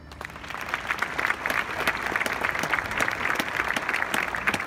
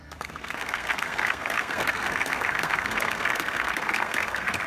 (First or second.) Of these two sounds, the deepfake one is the second